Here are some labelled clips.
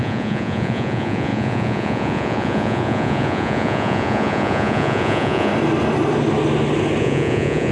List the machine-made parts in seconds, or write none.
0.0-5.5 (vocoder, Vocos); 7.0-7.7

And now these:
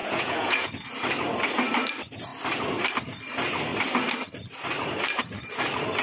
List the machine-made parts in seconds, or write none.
0.0-0.7 (vocoder, Vocos)

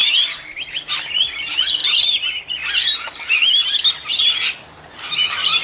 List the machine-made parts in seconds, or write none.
none

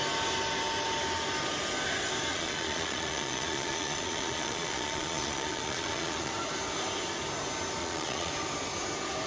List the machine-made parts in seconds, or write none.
2.3-6.3 (vocoder, Vocos); 7.8-8.3

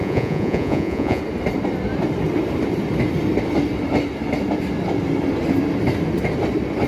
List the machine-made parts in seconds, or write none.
0.0-1.2 (vocoder, Vocos)